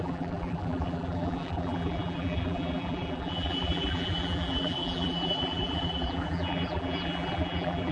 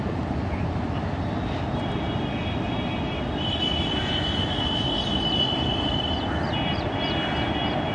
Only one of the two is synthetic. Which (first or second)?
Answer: first